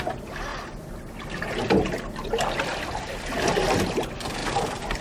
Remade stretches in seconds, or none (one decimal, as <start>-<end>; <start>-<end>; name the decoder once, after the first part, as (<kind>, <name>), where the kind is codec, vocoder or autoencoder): 0.5-3.5 (vocoder, BigVGAN v2); 4.4-5.0

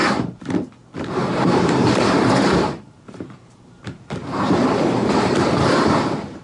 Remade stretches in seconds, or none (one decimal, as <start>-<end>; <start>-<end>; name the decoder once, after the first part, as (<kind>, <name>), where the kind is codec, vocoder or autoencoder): 1.1-6.4 (vocoder, BigVGAN v2)